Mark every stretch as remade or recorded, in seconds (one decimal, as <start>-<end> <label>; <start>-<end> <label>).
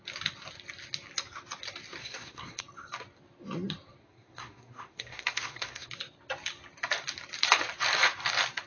0.0-2.0 recorded; 2.0-2.6 remade; 2.6-4.0 recorded; 4.0-5.9 remade; 5.9-8.7 recorded